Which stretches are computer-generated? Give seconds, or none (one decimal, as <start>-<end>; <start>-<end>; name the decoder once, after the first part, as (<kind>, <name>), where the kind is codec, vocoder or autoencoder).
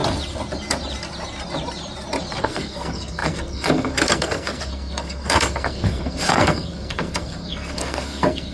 2.4-8.5 (codec, SNAC)